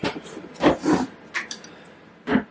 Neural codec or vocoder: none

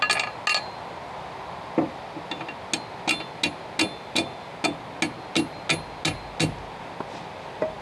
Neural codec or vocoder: none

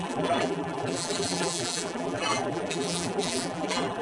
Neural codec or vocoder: vocoder, BigVGAN v2